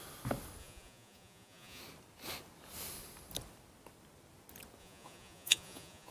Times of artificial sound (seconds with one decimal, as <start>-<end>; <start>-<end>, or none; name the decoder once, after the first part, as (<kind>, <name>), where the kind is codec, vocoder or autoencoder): 0.6-1.8 (vocoder, Vocos); 4.8-6.1